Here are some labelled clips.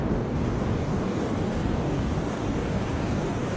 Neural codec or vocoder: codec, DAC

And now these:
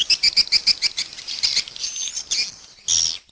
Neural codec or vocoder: none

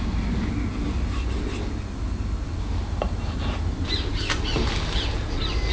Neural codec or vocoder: none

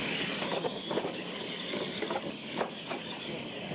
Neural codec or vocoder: codec, DAC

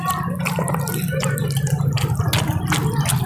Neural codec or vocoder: none